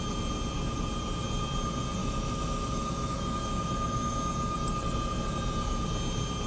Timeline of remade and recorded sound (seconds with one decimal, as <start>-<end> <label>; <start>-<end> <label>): 0.0-2.0 recorded; 2.0-4.2 remade; 4.2-6.5 recorded